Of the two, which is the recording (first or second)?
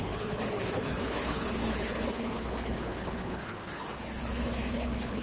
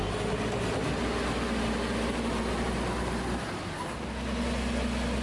second